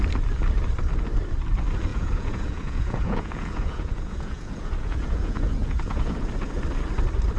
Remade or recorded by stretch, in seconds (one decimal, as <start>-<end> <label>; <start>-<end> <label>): 0.0-1.9 recorded; 1.9-6.3 remade; 6.3-7.4 recorded